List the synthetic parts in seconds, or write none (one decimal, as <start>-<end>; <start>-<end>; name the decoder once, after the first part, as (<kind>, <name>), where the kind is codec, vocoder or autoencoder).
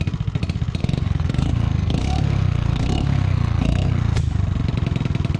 0.8-4.0 (codec, SNAC)